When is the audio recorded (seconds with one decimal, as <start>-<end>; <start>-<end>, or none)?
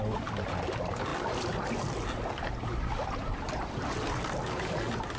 0.0-1.1; 1.7-5.2